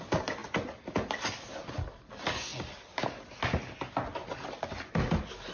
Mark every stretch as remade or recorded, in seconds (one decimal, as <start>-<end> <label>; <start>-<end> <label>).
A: 0.0-5.5 recorded